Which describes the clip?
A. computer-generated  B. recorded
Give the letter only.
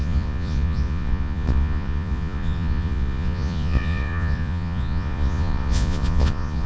A